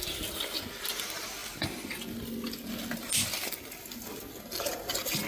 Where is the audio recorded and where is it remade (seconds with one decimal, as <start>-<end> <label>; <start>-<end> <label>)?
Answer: 0.0-5.3 recorded